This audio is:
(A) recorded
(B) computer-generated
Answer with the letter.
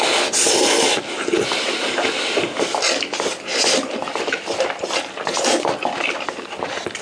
A